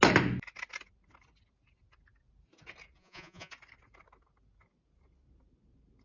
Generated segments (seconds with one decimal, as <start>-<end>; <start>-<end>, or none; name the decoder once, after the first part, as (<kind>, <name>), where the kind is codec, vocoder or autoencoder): 3.0-3.5 (vocoder, Vocos)